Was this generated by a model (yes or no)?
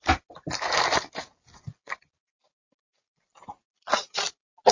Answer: no